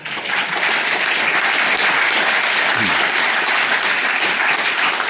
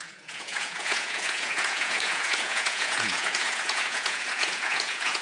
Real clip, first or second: first